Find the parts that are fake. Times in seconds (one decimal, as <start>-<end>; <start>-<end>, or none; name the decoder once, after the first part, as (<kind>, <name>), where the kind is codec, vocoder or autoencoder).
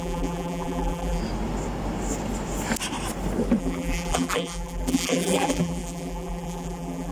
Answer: 0.0-1.2 (vocoder, BigVGAN v2); 3.6-7.1